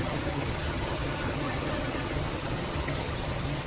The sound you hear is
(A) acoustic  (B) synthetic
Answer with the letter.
B